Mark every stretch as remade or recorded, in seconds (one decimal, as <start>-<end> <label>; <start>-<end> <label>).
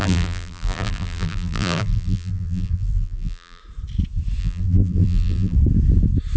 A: 0.0-3.6 remade; 3.6-4.4 recorded; 4.4-5.6 remade; 5.6-6.4 recorded